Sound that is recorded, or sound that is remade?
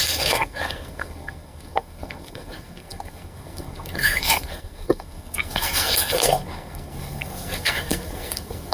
remade